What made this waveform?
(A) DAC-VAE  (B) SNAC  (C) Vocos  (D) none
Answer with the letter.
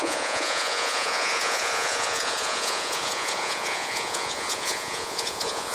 C